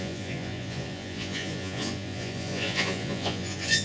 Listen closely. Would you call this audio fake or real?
fake